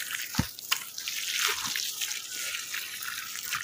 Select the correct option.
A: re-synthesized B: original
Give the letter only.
B